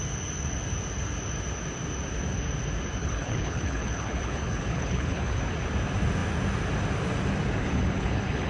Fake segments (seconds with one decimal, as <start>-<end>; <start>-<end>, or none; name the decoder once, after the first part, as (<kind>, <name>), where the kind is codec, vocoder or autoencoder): 3.0-5.4 (codec, HILCodec); 7.6-8.5